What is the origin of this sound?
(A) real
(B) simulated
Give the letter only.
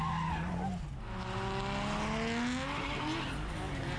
A